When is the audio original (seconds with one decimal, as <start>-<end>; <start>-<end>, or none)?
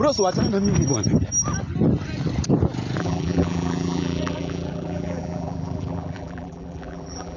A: 0.0-3.0